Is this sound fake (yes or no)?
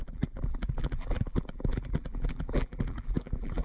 yes